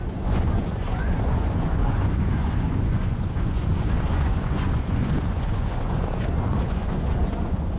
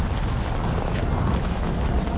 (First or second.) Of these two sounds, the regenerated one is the first